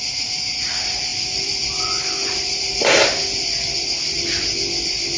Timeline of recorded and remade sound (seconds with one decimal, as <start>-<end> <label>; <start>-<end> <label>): 0.0-5.2 recorded

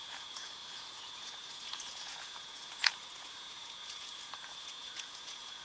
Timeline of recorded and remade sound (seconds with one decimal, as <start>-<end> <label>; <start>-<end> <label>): 0.0-5.6 remade

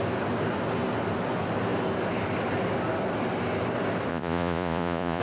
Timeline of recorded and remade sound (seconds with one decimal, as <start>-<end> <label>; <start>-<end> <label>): 0.0-4.1 recorded; 4.1-5.2 remade

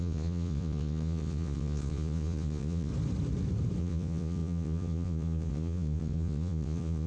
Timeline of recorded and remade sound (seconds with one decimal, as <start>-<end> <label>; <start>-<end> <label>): 0.0-2.9 remade; 2.9-3.8 recorded; 3.8-7.1 remade

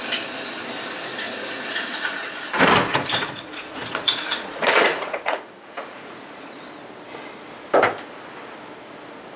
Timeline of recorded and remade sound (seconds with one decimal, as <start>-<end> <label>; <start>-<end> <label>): 0.0-1.1 recorded; 1.1-2.3 remade; 2.3-2.9 recorded; 2.9-6.6 remade; 6.6-9.4 recorded